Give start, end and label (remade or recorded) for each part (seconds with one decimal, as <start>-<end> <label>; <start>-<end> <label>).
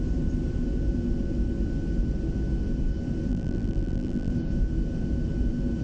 0.0-3.3 recorded; 3.3-4.3 remade; 4.3-5.8 recorded